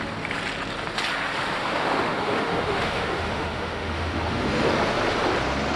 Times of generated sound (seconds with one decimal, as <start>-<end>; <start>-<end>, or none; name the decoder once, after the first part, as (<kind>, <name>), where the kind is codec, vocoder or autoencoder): 1.6-4.7 (autoencoder, DAC-VAE)